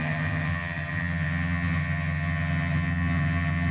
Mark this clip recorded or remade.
remade